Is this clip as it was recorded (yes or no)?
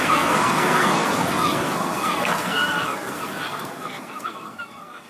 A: no